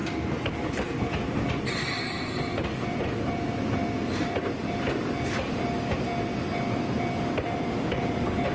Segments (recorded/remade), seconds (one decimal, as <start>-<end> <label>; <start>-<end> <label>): 0.0-8.5 recorded